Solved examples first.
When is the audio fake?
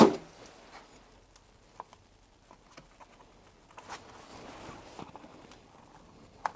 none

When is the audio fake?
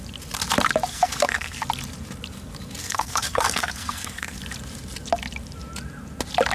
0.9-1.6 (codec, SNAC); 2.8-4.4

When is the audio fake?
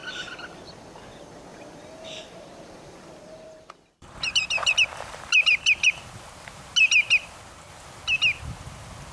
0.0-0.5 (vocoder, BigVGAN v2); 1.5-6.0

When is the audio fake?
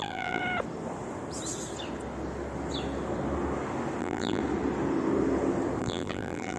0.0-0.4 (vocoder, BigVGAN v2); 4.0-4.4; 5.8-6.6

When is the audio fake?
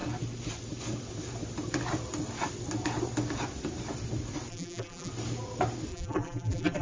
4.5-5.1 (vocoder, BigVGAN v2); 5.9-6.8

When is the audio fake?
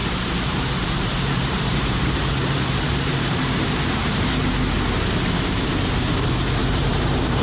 0.0-4.4 (vocoder, BigVGAN v2); 6.6-7.4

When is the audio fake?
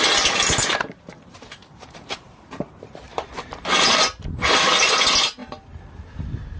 0.6-4.6 (vocoder, BigVGAN v2)